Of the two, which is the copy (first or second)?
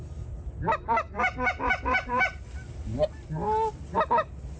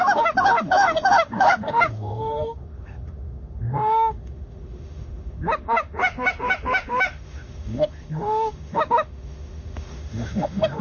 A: second